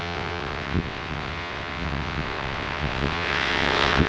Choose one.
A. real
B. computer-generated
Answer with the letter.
B